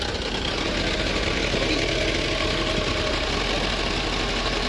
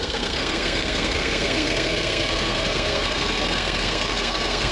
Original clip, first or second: first